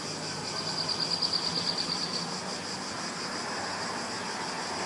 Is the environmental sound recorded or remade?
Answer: recorded